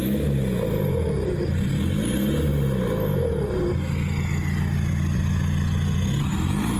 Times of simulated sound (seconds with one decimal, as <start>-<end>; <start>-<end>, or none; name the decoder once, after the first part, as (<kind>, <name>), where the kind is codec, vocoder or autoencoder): none